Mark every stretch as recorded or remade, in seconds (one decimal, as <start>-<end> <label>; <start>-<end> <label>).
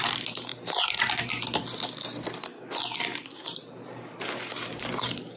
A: 0.0-0.5 recorded; 0.5-1.0 remade; 1.0-3.1 recorded; 3.1-5.4 remade